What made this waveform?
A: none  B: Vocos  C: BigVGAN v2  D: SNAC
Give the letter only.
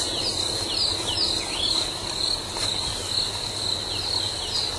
A